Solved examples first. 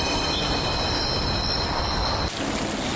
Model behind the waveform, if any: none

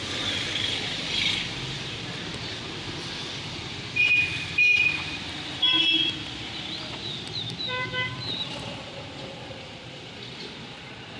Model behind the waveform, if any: vocoder, BigVGAN v2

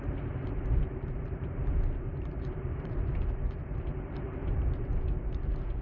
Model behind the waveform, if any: vocoder, BigVGAN v2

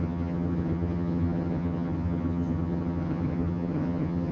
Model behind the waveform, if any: vocoder, HiFi-GAN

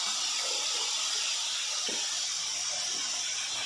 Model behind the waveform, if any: none